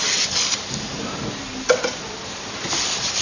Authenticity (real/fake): real